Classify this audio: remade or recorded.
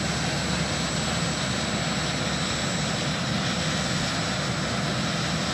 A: recorded